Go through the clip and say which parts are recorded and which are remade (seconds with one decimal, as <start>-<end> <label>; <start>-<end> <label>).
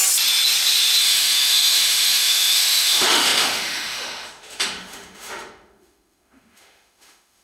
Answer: 0.0-1.0 recorded; 1.0-7.4 remade